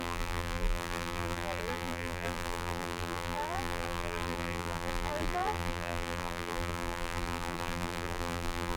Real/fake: fake